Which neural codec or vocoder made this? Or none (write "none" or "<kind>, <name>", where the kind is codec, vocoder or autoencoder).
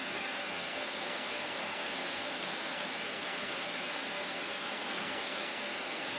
codec, SNAC